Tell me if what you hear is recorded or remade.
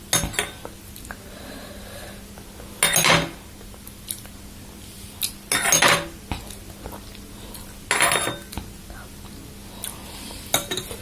recorded